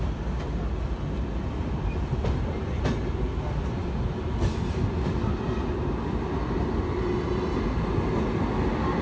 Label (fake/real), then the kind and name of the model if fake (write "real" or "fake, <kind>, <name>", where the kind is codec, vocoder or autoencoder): real